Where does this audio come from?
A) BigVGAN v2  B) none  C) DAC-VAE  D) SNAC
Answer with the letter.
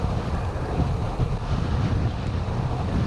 B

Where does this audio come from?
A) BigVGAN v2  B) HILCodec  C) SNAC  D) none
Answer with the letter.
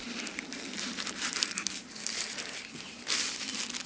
D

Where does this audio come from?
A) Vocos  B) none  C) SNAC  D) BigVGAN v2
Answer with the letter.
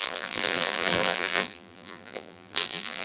D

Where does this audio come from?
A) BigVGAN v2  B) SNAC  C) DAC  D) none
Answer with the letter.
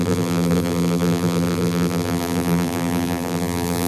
A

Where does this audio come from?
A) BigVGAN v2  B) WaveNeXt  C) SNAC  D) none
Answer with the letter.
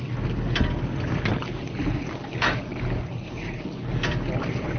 D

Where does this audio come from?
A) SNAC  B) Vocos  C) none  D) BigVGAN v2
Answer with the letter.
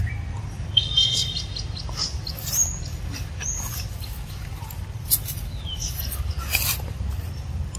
C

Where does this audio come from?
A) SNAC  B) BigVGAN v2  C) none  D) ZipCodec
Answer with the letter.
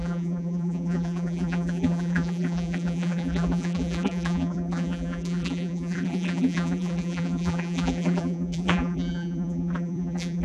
B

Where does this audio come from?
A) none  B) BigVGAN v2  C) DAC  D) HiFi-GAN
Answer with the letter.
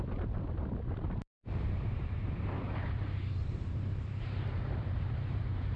B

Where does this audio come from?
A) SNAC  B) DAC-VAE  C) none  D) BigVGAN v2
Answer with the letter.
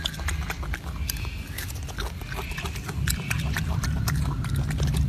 C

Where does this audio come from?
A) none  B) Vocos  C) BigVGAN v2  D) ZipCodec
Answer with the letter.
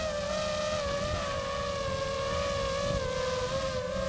A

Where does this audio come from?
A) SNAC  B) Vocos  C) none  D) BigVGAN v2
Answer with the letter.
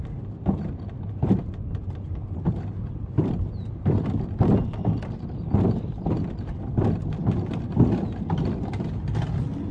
C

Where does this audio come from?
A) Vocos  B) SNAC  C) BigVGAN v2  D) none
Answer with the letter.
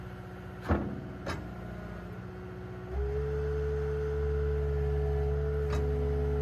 D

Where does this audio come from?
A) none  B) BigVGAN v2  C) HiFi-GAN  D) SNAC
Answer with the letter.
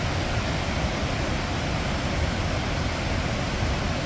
A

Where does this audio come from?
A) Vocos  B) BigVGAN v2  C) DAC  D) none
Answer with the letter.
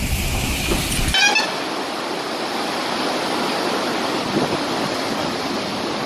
D